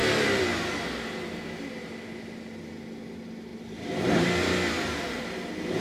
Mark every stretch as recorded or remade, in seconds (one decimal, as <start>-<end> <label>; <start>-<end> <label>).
0.0-0.6 remade; 0.6-3.5 recorded; 3.5-5.2 remade; 5.2-5.8 recorded